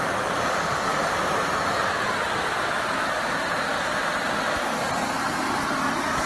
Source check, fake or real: real